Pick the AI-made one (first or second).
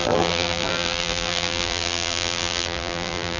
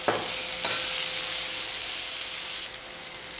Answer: first